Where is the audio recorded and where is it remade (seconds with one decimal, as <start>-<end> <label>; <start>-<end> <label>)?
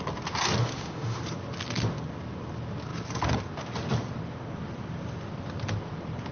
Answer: 0.0-0.6 recorded; 0.6-1.2 remade; 1.2-6.3 recorded